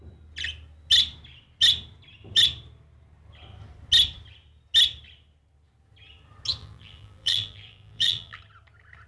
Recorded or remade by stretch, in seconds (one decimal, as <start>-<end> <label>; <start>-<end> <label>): 0.0-6.6 recorded; 6.6-8.4 remade; 8.4-9.1 recorded